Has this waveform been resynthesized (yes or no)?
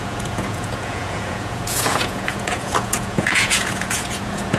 yes